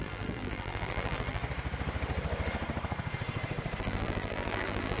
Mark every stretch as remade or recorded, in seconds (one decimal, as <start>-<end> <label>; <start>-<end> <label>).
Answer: 0.0-1.4 remade; 1.4-3.8 recorded; 3.8-5.0 remade